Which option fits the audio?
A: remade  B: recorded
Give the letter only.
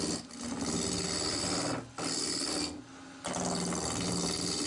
B